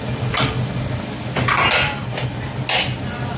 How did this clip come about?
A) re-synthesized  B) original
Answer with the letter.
B